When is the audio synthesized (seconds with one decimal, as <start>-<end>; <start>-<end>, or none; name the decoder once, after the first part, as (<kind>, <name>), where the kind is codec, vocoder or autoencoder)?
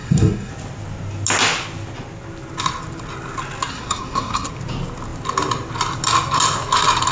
0.0-0.5 (codec, SNAC); 3.7-4.5